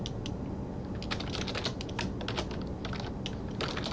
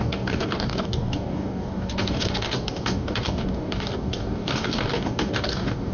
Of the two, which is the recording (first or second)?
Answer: first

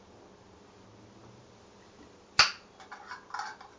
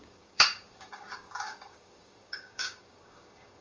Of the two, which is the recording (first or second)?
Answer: first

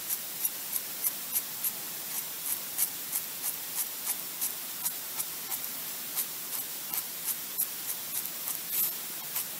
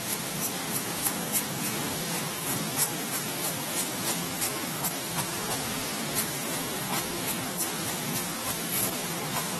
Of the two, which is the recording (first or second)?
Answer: first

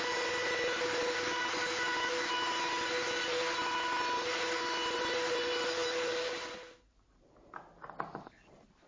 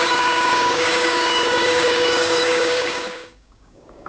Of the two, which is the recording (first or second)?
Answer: first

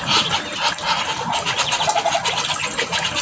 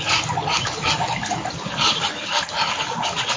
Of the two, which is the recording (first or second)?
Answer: first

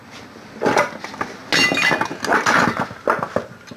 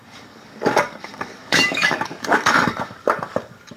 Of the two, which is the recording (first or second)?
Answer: first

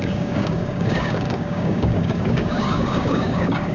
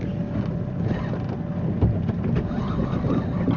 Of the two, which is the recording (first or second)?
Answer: second